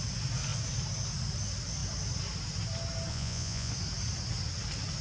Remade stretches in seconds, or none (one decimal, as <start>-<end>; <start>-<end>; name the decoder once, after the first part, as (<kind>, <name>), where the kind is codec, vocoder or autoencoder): 3.1-3.7 (vocoder, Vocos)